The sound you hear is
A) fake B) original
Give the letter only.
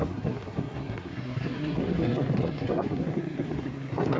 A